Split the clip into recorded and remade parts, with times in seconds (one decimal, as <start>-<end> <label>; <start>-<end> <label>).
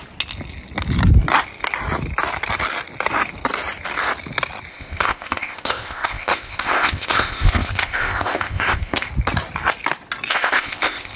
0.0-4.7 recorded; 4.7-9.1 remade; 9.1-10.3 recorded; 10.3-11.2 remade